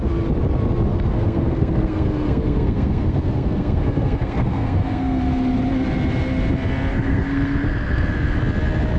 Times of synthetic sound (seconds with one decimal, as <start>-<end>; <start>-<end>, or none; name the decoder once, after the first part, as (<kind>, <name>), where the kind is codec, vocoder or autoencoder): 0.9-5.2 (codec, SNAC); 6.9-8.4